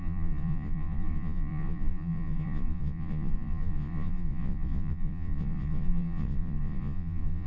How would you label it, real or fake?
fake